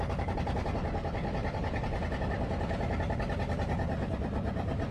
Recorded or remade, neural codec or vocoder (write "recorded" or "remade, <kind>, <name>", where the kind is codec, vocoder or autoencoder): recorded